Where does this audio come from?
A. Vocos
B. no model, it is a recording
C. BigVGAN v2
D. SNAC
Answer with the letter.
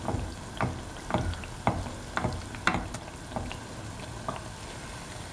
B